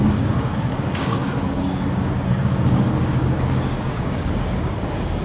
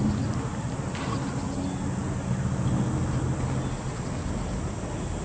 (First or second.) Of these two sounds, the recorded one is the second